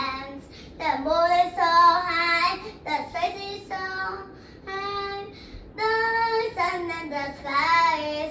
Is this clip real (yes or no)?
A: yes